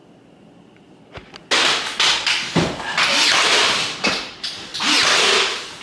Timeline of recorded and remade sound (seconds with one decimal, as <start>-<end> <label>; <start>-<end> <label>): 0.0-3.4 recorded; 3.4-4.7 remade; 4.7-5.8 recorded